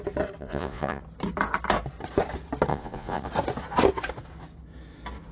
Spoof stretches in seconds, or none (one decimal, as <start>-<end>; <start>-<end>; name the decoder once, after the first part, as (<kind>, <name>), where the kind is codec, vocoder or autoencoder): 0.4-1.0 (vocoder, Vocos); 2.7-3.3